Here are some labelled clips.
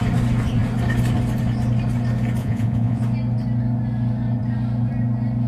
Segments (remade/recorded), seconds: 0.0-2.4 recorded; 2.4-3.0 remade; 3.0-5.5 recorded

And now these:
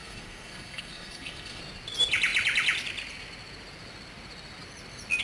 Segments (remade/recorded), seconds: 0.0-1.6 remade; 1.6-5.2 recorded

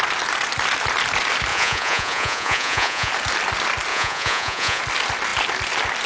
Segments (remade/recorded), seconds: 0.0-1.5 recorded; 1.5-3.1 remade; 3.1-3.9 recorded; 3.9-4.8 remade; 4.8-6.1 recorded